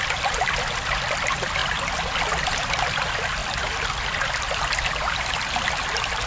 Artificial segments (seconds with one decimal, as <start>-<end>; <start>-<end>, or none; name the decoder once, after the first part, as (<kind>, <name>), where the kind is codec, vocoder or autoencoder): 0.0-1.6 (vocoder, BigVGAN v2); 2.2-6.3